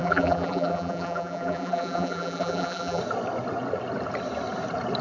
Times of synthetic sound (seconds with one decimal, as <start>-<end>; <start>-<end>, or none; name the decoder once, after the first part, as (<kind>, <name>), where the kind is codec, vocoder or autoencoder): 0.0-3.0 (vocoder, BigVGAN v2)